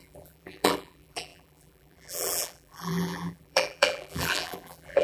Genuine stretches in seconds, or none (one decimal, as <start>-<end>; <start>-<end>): none